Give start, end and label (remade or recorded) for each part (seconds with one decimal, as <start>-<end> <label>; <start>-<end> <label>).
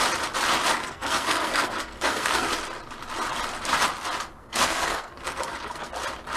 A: 0.0-0.8 recorded; 0.8-2.5 remade; 2.5-4.4 recorded; 4.4-5.9 remade; 5.9-6.4 recorded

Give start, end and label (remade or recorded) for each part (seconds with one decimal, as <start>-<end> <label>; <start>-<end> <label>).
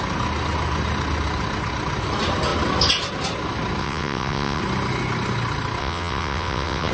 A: 0.0-3.8 recorded; 3.8-4.6 remade; 4.6-5.8 recorded; 5.8-6.9 remade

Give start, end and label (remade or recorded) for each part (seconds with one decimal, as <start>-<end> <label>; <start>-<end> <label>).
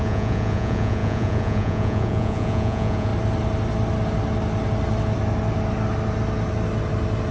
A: 0.0-3.1 remade; 3.1-7.3 recorded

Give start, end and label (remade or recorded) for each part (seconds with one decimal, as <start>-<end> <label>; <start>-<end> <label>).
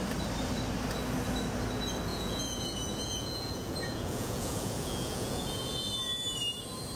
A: 0.0-2.1 recorded; 2.1-5.9 remade; 5.9-7.0 recorded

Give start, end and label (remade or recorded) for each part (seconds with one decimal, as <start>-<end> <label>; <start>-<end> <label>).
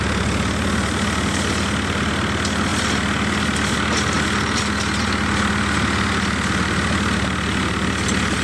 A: 0.0-8.4 recorded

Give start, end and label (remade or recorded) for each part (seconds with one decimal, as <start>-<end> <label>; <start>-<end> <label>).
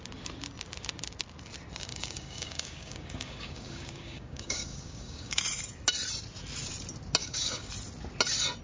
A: 0.0-1.9 recorded; 1.9-5.4 remade; 5.4-7.2 recorded; 7.2-7.7 remade; 7.7-8.6 recorded